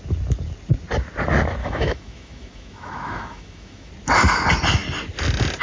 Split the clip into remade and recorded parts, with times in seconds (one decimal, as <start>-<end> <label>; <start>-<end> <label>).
0.0-1.6 recorded; 1.6-3.9 remade; 3.9-5.6 recorded